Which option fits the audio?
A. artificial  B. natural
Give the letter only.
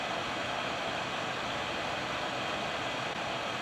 B